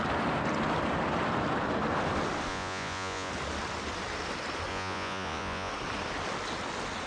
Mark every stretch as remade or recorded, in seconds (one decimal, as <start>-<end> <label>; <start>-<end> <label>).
0.0-2.5 recorded; 2.5-3.3 remade; 3.3-4.7 recorded; 4.7-5.7 remade; 5.7-7.1 recorded